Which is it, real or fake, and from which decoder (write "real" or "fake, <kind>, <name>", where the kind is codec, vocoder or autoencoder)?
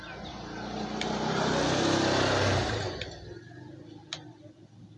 real